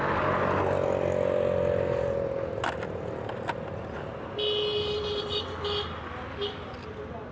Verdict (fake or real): real